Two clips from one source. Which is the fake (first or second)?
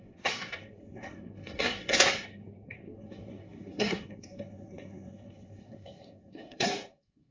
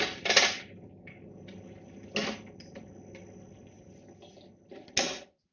first